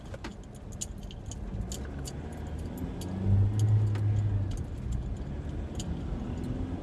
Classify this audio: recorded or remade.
recorded